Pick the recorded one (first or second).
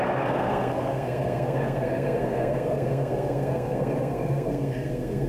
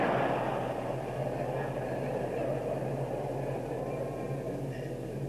second